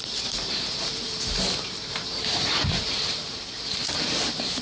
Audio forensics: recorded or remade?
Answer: remade